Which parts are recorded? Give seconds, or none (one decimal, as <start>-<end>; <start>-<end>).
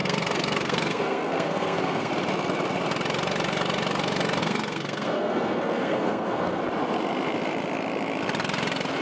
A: 2.1-4.4; 6.6-9.0